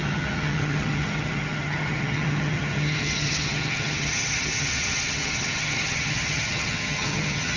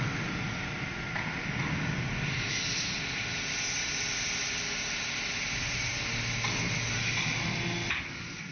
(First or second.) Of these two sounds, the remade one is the first